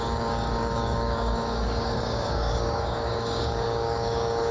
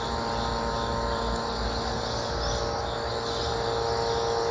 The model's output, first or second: first